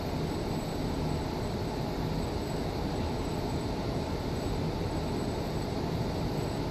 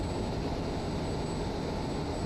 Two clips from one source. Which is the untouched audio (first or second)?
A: second